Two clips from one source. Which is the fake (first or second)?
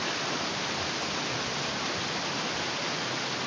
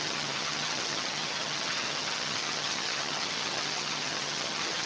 second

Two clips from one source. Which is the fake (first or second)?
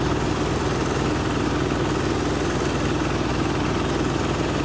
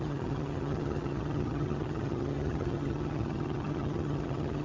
second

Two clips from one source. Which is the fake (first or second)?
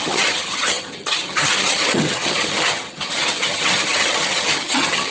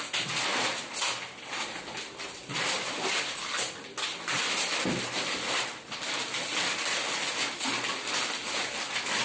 first